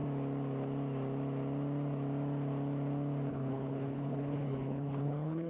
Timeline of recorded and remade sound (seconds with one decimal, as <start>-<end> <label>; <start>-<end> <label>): 0.0-3.3 recorded; 3.3-5.5 remade